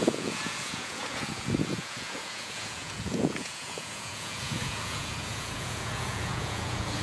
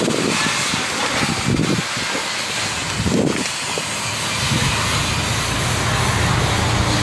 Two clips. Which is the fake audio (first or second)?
first